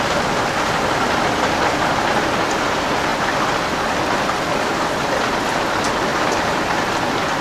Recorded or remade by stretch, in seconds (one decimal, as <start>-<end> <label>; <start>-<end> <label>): 0.0-7.4 recorded